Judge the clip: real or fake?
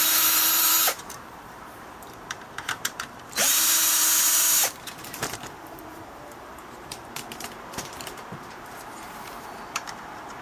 fake